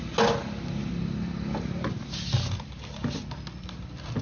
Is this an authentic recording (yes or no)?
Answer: yes